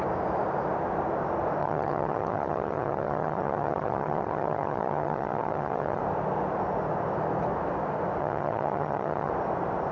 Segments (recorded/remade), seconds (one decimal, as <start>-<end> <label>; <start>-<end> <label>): 0.0-1.6 recorded; 1.6-6.0 remade; 6.0-8.2 recorded; 8.2-9.3 remade; 9.3-9.9 recorded